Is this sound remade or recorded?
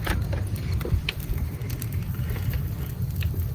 recorded